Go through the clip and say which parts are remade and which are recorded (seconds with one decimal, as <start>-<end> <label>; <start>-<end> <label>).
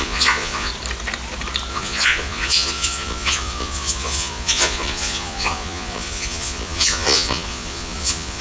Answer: 0.0-0.7 remade; 0.7-1.7 recorded; 1.7-8.4 remade